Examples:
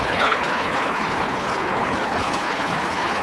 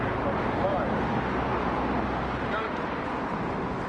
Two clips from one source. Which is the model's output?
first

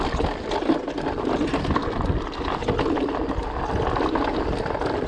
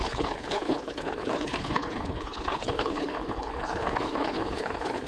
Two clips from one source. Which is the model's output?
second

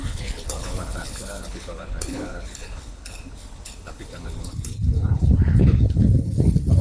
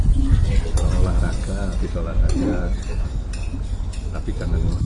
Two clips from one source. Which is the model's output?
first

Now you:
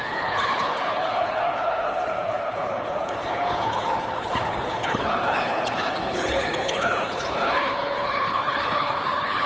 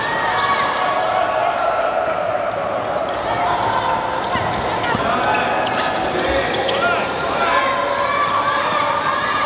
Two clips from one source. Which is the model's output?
first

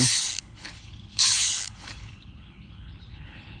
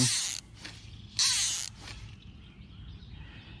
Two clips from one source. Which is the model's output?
first